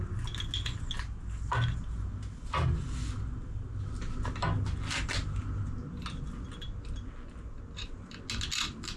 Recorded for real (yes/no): yes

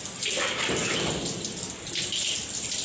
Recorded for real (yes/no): yes